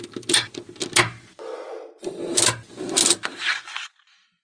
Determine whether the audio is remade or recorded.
recorded